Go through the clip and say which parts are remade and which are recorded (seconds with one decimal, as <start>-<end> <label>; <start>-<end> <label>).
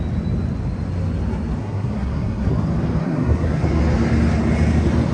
0.0-1.6 recorded; 1.6-2.5 remade; 2.5-3.0 recorded; 3.0-3.8 remade; 3.8-5.1 recorded